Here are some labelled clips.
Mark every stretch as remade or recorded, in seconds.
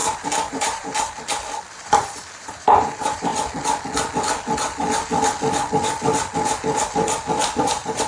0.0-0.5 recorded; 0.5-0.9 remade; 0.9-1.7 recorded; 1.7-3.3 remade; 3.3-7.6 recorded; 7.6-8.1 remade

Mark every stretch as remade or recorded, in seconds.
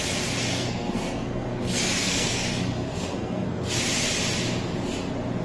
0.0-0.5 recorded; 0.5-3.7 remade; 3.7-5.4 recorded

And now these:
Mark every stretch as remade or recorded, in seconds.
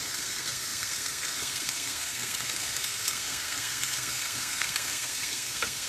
0.0-5.9 remade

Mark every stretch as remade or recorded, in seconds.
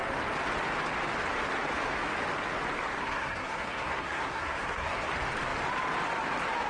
0.0-3.0 recorded; 3.0-5.1 remade; 5.1-6.7 recorded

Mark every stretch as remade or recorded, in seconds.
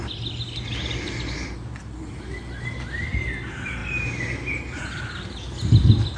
0.0-6.2 recorded